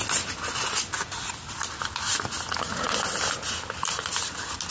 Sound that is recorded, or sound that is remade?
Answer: recorded